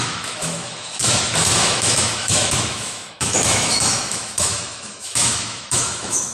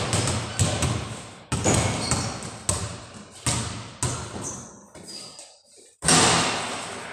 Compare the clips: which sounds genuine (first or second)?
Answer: second